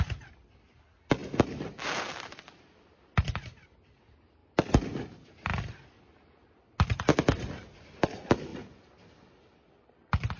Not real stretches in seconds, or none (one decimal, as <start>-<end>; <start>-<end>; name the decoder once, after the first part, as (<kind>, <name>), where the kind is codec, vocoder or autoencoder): none

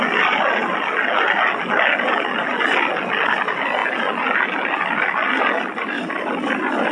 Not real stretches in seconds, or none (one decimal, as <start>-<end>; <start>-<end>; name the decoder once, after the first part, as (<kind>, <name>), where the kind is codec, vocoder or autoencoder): none

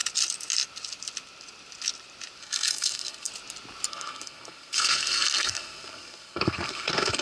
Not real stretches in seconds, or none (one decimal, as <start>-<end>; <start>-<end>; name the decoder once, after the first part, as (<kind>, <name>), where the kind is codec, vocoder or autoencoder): 2.4-3.3 (codec, SNAC); 3.9-7.2

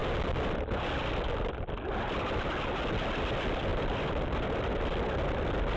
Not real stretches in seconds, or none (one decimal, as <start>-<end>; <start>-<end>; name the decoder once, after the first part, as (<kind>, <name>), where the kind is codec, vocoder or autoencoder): 3.7-5.8 (vocoder, BigVGAN v2)

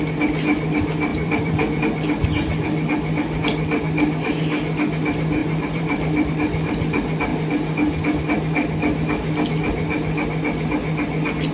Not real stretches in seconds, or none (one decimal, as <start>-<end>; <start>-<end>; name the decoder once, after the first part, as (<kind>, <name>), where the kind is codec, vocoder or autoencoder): 1.1-1.8 (vocoder, BigVGAN v2); 5.4-6.3

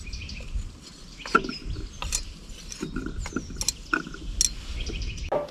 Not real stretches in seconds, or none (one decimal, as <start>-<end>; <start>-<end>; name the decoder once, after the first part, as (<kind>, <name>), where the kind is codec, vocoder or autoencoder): none